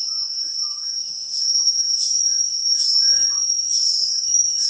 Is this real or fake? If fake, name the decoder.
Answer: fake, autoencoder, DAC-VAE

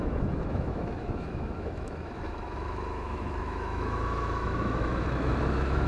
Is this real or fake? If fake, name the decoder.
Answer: fake, autoencoder, DAC-VAE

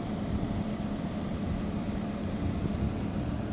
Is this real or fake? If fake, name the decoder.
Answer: real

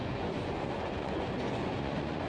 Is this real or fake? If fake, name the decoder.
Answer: fake, vocoder, Vocos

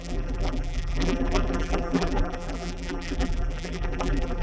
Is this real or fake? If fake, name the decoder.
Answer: fake, vocoder, BigVGAN v2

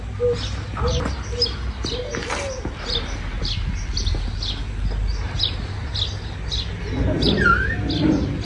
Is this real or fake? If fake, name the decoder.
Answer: real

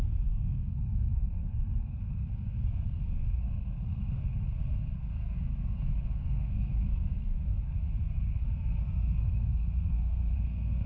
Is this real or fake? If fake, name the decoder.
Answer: fake, codec, SNAC